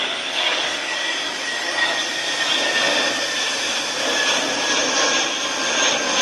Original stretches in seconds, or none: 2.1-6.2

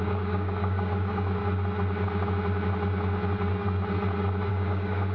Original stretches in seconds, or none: 1.4-4.5